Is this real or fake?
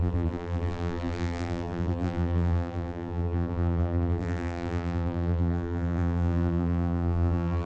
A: fake